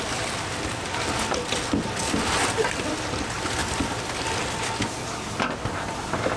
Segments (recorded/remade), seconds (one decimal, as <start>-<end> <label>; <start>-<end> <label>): 0.0-3.6 recorded; 3.6-4.2 remade; 4.2-6.4 recorded